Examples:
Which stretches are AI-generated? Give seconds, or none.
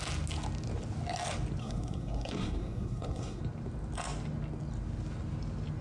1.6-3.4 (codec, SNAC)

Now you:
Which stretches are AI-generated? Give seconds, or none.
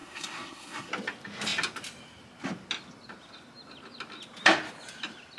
0.0-0.9 (codec, SNAC)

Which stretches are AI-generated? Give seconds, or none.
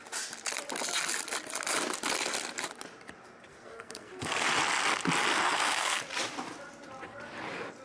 3.5-4.5 (codec, SNAC); 5.3-6.0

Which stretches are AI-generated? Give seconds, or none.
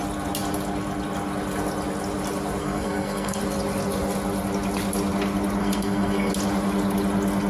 2.6-3.4 (codec, SNAC); 5.6-6.3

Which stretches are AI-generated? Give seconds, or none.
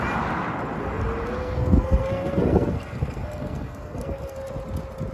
1.4-4.5 (codec, SNAC)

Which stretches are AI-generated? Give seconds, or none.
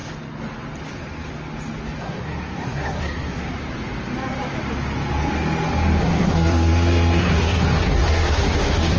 2.0-3.5 (codec, SNAC); 6.0-9.0